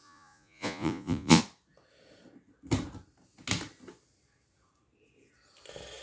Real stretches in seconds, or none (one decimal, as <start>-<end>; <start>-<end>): 1.4-6.0